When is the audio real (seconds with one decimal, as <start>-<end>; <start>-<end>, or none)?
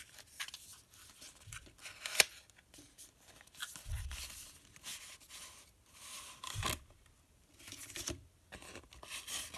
0.0-9.6